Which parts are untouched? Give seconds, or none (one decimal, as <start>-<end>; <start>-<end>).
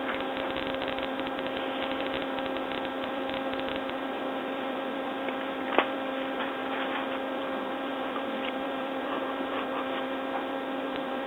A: 2.2-2.9; 6.6-7.3